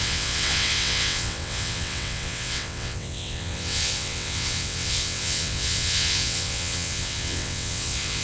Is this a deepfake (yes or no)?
yes